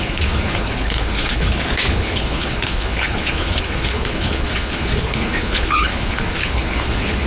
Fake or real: fake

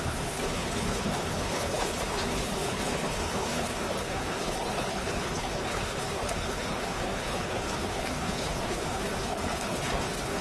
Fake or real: fake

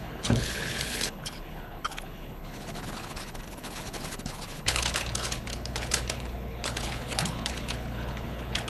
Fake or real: fake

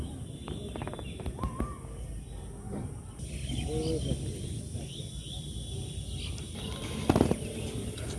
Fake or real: real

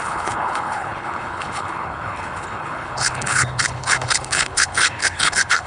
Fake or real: fake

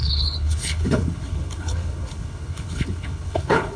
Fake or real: fake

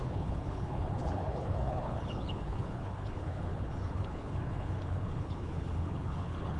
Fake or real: fake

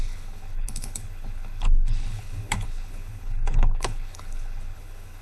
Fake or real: fake